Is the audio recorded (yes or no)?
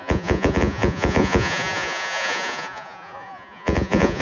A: no